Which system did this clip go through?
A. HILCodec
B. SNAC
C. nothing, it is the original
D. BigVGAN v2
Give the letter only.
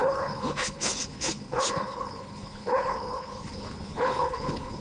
A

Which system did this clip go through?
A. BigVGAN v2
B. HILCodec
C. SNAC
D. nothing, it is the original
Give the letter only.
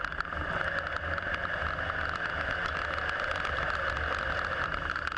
D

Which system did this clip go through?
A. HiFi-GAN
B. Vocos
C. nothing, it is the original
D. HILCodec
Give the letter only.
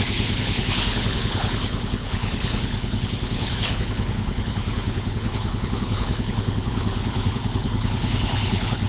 D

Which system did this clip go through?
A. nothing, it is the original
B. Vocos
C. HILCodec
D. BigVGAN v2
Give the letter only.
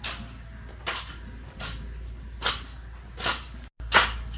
A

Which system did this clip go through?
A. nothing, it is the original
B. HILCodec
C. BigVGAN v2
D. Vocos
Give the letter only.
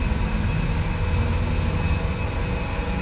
A